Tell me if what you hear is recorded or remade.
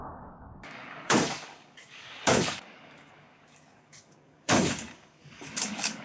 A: remade